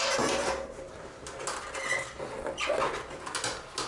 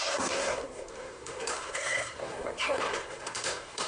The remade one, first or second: second